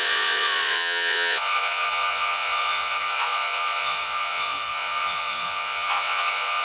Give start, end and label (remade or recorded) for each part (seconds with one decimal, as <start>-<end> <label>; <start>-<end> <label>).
0.0-6.6 remade